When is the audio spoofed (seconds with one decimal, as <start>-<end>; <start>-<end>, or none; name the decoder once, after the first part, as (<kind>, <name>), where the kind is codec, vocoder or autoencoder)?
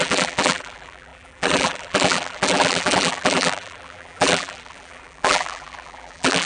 0.0-6.5 (vocoder, BigVGAN v2)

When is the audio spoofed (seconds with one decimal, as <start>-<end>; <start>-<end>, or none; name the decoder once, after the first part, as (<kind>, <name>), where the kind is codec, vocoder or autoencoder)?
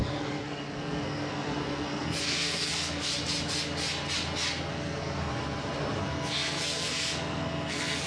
0.0-3.1 (codec, SNAC); 4.7-5.3; 6.0-8.1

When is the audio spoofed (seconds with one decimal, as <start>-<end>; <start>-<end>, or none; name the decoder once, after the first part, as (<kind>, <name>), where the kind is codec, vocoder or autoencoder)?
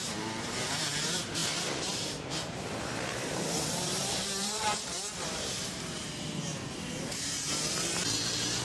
0.0-8.6 (vocoder, BigVGAN v2)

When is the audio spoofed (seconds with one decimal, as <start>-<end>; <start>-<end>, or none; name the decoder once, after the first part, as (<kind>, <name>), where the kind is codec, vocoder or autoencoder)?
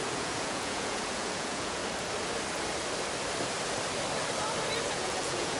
0.0-1.8 (vocoder, Vocos); 4.9-5.6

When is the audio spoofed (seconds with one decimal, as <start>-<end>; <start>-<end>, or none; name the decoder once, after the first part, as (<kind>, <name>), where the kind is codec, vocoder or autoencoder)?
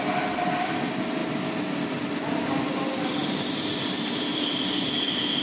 none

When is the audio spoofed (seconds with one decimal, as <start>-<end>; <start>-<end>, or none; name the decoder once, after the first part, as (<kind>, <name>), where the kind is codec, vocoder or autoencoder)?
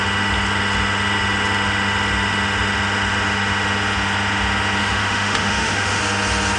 4.8-6.0 (autoencoder, DAC-VAE)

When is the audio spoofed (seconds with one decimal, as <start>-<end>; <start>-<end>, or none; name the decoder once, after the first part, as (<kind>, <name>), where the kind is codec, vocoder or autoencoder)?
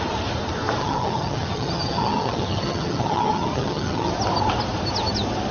0.8-4.1 (vocoder, HiFi-GAN)